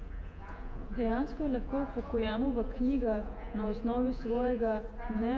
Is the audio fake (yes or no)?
yes